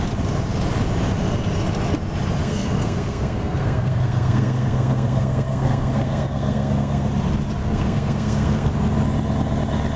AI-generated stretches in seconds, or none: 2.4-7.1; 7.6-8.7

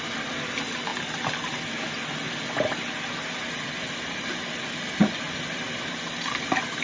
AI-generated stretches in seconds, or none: none

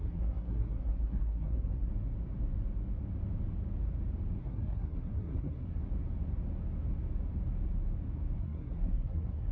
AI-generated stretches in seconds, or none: 0.0-1.9; 4.4-5.9; 8.4-9.5

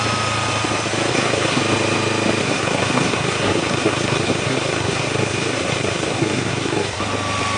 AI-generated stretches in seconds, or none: 1.1-1.6; 2.4-7.0

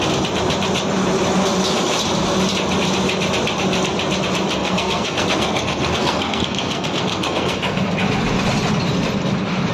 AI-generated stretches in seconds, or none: 4.6-7.8

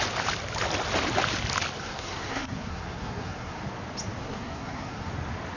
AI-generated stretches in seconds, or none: 1.8-3.6; 4.2-5.1

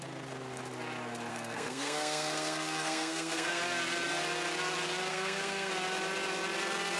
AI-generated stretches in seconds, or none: 1.3-3.6; 5.1-5.7

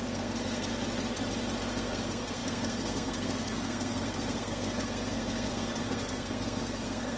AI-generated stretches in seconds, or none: 0.0-0.7; 1.6-7.2